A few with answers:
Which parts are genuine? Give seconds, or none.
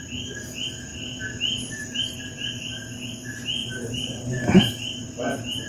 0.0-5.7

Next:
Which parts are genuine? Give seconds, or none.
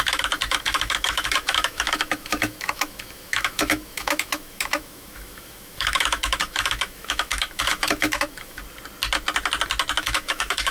8.6-10.0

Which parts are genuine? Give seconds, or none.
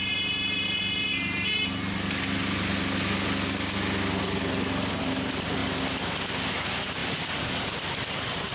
0.0-8.5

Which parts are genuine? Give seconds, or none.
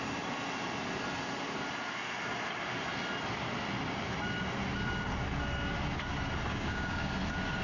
0.0-6.5; 7.1-7.6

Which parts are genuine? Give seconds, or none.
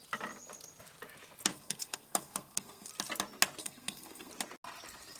0.0-1.5; 2.9-3.6; 4.3-5.2